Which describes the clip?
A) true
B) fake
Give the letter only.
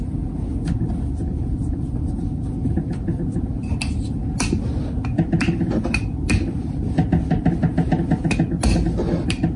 A